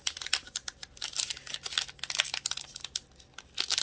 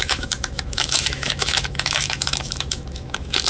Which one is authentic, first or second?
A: first